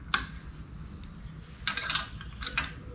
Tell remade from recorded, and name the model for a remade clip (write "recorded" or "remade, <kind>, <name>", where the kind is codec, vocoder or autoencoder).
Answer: recorded